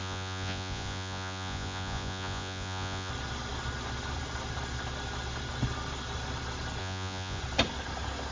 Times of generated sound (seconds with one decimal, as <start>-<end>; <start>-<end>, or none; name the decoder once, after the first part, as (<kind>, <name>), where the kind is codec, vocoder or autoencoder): 0.0-3.1 (vocoder, Vocos); 6.8-7.4